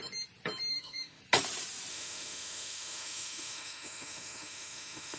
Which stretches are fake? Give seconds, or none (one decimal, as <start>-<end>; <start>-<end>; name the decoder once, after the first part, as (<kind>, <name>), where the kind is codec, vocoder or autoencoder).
0.7-1.2 (autoencoder, DAC-VAE); 1.9-5.2